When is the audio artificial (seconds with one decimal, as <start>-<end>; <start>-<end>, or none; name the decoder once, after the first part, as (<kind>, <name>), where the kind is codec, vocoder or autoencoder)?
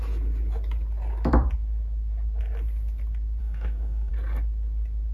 3.4-4.1 (codec, DAC)